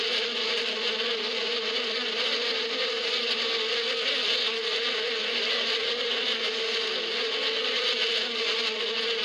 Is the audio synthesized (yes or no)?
no